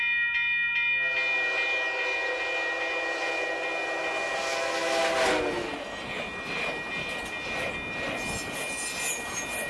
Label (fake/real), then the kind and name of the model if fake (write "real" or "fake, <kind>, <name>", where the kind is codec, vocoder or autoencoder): real